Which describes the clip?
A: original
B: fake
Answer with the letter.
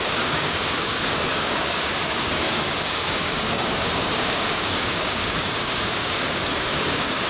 B